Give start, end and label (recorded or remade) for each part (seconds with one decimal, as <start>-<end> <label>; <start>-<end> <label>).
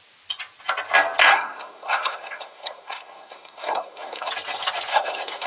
0.0-1.3 recorded; 1.3-4.3 remade; 4.3-4.9 recorded; 4.9-5.5 remade